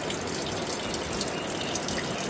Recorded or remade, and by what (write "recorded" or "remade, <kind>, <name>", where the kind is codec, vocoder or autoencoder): recorded